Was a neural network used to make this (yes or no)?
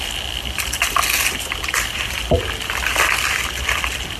no